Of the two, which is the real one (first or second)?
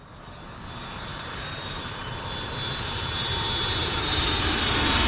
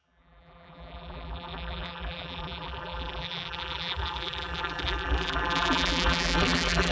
first